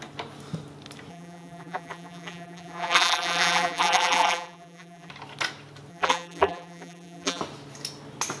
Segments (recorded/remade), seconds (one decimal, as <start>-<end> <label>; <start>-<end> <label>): 0.0-1.1 recorded; 1.1-5.1 remade; 5.1-5.9 recorded; 5.9-7.4 remade; 7.4-8.4 recorded